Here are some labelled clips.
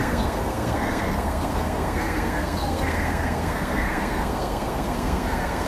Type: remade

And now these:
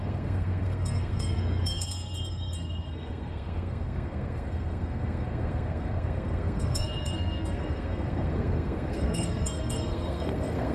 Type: remade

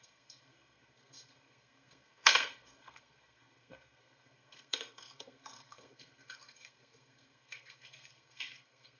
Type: remade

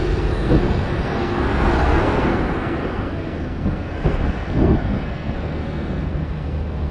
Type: remade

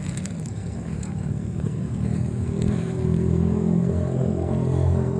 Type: remade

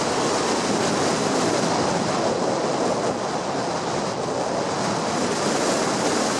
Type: recorded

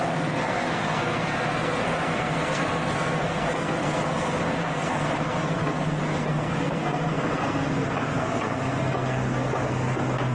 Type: remade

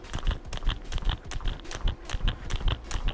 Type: recorded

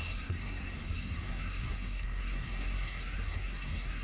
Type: remade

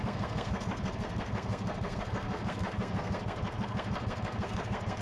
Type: remade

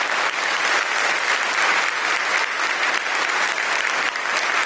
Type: recorded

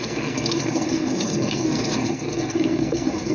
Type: remade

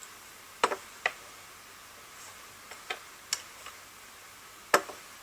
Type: recorded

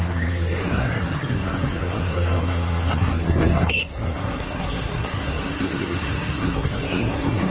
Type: remade